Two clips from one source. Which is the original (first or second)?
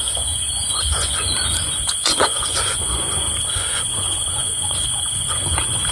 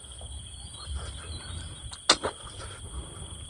second